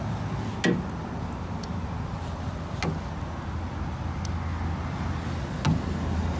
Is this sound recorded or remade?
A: recorded